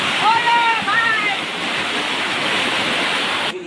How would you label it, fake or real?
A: fake